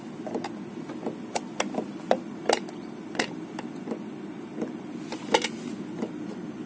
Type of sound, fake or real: real